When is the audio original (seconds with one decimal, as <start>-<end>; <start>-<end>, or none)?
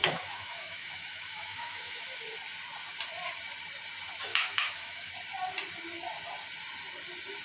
2.2-4.3; 5.1-7.4